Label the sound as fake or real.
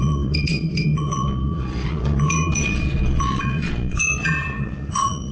fake